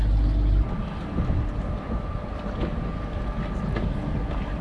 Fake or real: real